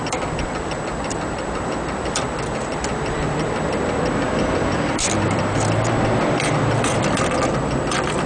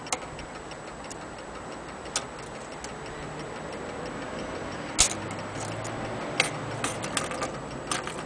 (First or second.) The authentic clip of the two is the second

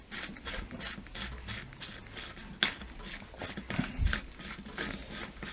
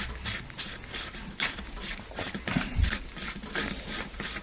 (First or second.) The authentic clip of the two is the first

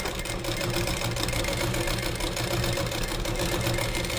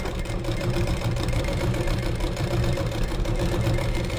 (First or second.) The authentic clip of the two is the first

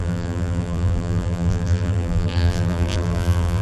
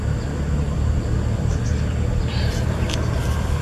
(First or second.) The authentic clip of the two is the second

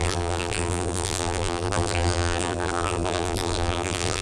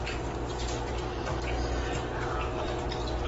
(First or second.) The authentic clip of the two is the second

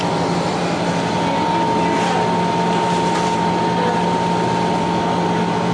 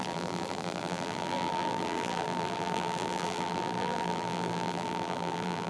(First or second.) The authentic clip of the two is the first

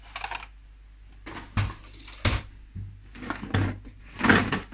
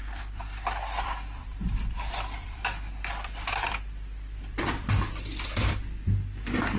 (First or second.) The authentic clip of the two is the first